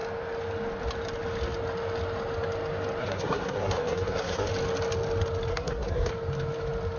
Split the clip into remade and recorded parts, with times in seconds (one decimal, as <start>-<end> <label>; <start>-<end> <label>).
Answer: 0.0-3.0 recorded; 3.0-4.5 remade; 4.5-5.5 recorded; 5.5-6.1 remade; 6.1-7.0 recorded